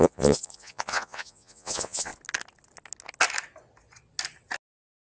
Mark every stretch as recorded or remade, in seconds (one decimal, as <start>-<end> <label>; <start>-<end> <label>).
0.0-2.1 remade; 2.1-5.1 recorded

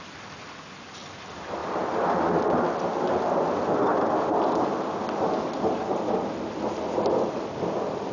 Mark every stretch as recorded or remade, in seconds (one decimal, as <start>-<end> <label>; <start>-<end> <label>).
0.0-8.1 recorded

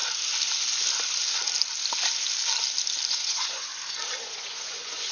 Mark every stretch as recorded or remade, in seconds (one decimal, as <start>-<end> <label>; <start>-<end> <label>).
0.0-3.1 recorded; 3.1-3.7 remade; 3.7-4.2 recorded; 4.2-5.1 remade

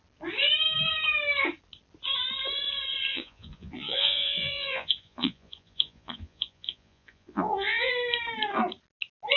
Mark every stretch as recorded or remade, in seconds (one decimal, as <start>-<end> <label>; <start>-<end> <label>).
0.0-3.1 recorded; 3.1-7.9 remade; 7.9-9.4 recorded

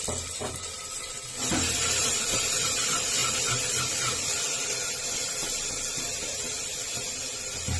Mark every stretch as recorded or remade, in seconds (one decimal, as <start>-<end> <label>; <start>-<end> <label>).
0.0-7.8 recorded

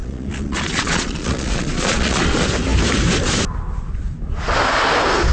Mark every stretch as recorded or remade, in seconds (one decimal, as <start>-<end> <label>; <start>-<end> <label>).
0.0-2.2 remade; 2.2-5.3 recorded